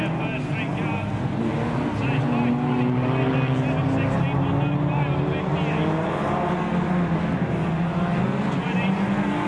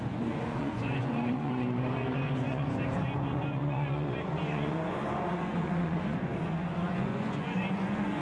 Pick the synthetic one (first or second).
second